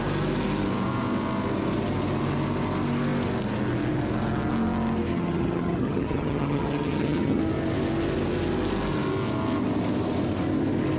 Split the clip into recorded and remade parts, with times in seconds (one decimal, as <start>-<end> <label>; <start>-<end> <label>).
0.0-5.1 recorded; 5.1-7.4 remade; 7.4-11.0 recorded